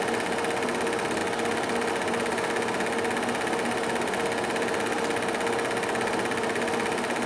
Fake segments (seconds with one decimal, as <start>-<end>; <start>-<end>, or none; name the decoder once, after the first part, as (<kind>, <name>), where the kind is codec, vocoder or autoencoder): none